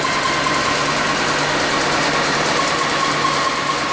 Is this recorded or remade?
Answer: recorded